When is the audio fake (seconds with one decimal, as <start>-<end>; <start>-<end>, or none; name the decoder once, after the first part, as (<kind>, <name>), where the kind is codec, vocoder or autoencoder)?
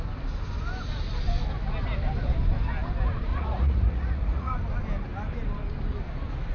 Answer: 3.3-4.5 (vocoder, Vocos)